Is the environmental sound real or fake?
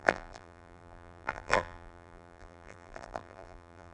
fake